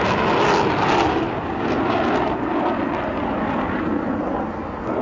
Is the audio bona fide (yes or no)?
yes